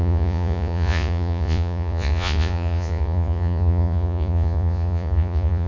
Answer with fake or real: fake